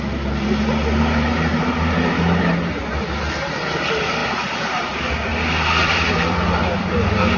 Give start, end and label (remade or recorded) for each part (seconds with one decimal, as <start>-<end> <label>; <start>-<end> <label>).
0.0-5.3 recorded; 5.3-7.4 remade